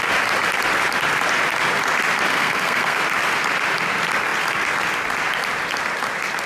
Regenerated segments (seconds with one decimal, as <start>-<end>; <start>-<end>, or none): 2.3-3.0